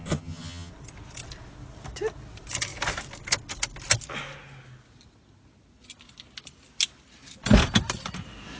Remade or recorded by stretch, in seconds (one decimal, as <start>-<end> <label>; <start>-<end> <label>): 0.0-0.7 remade; 0.7-8.6 recorded